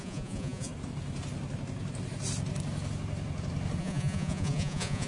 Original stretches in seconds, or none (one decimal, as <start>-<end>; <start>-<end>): 0.7-3.8